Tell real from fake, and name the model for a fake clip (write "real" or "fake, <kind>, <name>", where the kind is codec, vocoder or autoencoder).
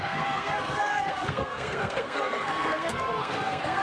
fake, codec, SNAC